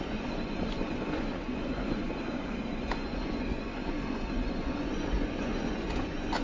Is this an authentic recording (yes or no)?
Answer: no